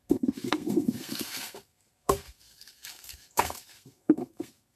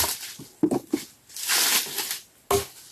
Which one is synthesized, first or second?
first